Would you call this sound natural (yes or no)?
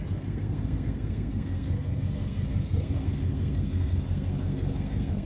no